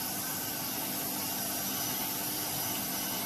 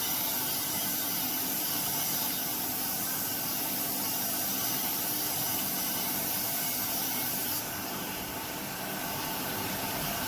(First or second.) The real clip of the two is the first